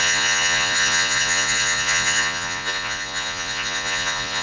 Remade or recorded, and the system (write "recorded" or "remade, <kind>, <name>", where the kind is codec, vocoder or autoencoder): remade, vocoder, Vocos